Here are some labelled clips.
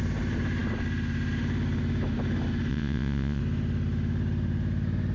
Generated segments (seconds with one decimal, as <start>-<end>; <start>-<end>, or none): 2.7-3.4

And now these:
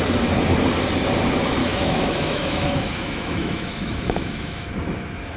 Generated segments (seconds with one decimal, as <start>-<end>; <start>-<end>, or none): 1.6-4.7

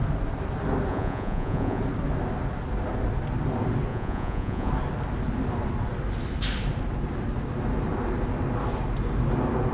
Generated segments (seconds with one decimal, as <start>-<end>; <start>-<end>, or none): 0.9-1.8; 3.9-4.7